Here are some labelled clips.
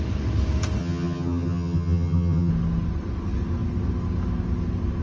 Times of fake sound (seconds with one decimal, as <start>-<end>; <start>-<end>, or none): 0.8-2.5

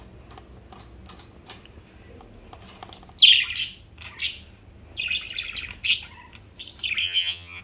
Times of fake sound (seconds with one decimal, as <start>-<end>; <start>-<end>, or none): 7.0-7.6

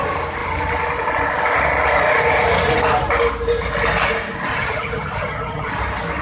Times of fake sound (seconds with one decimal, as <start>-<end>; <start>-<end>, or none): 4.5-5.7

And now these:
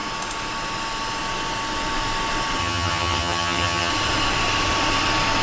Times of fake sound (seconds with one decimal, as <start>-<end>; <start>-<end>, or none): 2.6-3.9

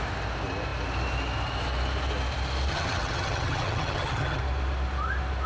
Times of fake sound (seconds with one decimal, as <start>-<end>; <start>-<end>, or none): 2.7-4.4

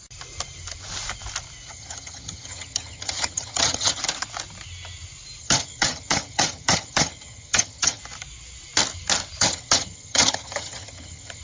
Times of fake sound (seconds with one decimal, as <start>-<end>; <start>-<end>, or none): 1.7-4.0; 5.4-8.0; 9.4-11.4